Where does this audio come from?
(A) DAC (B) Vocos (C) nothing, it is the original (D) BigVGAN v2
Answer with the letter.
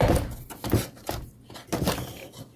C